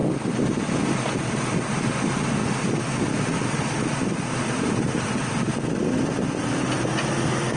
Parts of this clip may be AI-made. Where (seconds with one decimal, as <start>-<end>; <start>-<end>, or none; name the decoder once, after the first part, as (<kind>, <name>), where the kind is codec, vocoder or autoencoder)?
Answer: 2.4-6.8 (vocoder, BigVGAN v2)